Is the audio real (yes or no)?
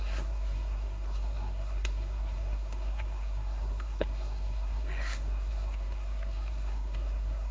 no